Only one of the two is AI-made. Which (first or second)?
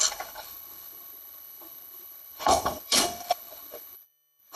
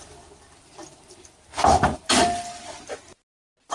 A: first